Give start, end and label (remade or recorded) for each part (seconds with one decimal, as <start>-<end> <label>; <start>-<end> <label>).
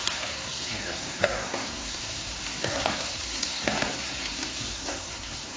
0.0-5.6 remade